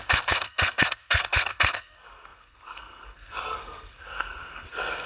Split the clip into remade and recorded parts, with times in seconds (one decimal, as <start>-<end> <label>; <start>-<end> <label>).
0.0-5.1 remade